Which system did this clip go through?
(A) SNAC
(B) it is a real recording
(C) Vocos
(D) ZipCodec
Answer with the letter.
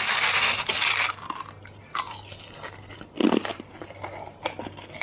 B